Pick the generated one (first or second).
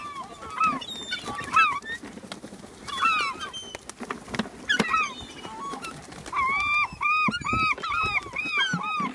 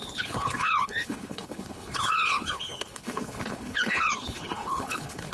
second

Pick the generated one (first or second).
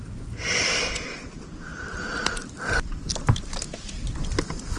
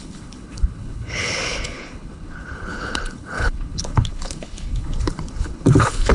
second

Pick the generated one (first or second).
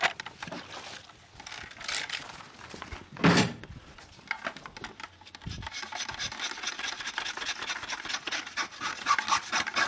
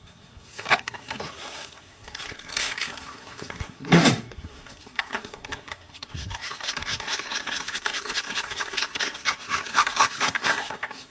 second